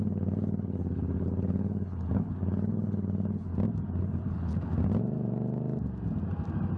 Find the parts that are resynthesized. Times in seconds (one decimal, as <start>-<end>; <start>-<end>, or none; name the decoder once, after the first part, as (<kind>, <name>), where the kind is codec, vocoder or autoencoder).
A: 0.0-3.5 (codec, HILCodec); 4.0-4.5